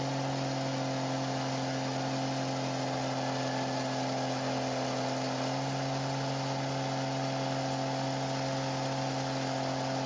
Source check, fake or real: real